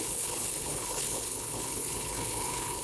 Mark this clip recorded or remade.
remade